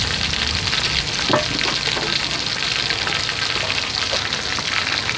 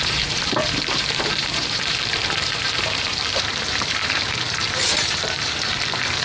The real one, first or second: first